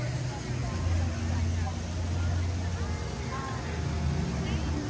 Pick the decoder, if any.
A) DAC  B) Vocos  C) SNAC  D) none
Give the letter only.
D